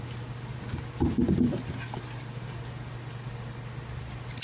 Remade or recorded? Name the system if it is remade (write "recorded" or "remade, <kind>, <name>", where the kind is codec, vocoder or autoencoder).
recorded